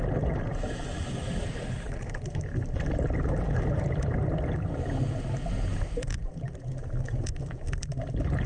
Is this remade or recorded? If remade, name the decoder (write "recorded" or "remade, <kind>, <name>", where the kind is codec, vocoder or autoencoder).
recorded